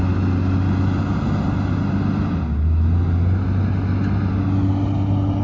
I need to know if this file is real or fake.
real